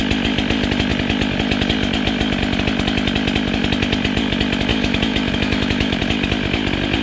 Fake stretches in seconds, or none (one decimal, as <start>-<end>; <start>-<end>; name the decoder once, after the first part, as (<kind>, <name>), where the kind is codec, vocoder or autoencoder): 4.7-6.0 (autoencoder, DAC-VAE)